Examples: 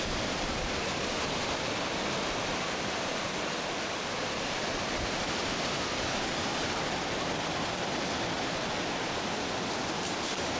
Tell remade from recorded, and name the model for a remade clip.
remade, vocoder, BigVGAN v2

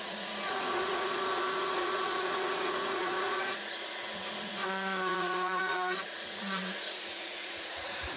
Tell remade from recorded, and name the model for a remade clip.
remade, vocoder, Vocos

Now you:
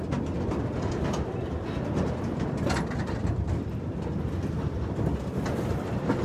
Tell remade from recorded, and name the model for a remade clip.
recorded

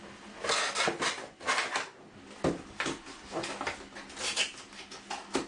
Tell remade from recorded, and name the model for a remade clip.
recorded